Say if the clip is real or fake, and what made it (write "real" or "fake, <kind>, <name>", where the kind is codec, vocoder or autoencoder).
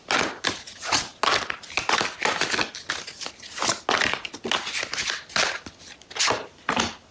real